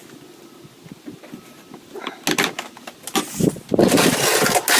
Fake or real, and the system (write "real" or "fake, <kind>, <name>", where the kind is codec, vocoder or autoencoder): real